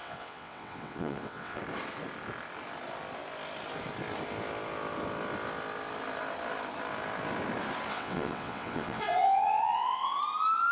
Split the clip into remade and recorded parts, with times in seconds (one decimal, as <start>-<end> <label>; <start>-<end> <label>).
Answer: 0.0-1.6 remade; 1.6-7.9 recorded; 7.9-10.2 remade; 10.2-10.7 recorded